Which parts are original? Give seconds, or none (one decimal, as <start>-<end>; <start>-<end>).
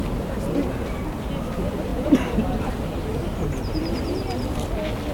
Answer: 0.7-1.9; 2.7-3.2; 4.2-5.1